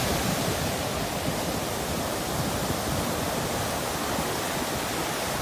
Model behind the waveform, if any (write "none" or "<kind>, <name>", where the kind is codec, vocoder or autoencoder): none